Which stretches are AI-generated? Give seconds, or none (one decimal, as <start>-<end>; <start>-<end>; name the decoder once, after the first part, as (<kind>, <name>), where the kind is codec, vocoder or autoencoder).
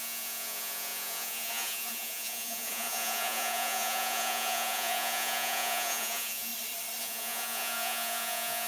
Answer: 0.0-6.5 (vocoder, Vocos); 7.0-8.7